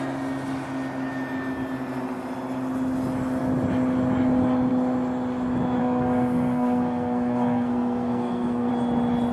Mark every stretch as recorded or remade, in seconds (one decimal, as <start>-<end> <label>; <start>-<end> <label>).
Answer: 0.0-5.8 recorded; 5.8-8.7 remade; 8.7-9.3 recorded